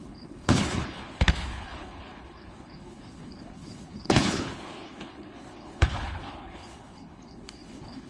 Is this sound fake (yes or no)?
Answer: yes